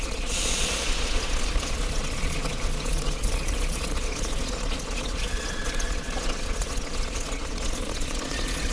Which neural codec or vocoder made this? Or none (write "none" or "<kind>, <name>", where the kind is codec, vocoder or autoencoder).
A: vocoder, Vocos